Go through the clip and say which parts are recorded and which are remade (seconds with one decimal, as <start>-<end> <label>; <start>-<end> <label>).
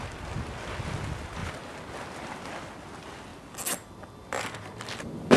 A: 0.0-1.4 recorded; 1.4-2.5 remade; 2.5-5.4 recorded